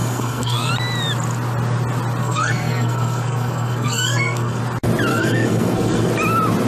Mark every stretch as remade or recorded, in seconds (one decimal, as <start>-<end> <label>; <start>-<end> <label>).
0.0-0.7 remade; 0.7-2.2 recorded; 2.2-4.6 remade; 4.6-5.1 recorded; 5.1-6.1 remade; 6.1-6.7 recorded